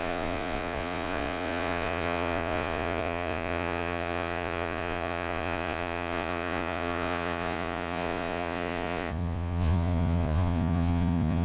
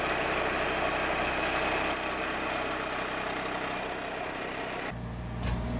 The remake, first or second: first